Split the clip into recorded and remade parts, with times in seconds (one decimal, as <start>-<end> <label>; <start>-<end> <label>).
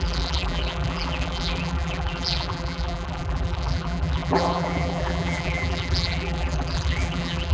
0.0-7.5 remade